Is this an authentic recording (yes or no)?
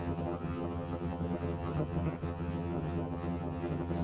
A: no